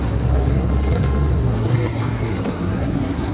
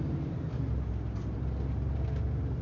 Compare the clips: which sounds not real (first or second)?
first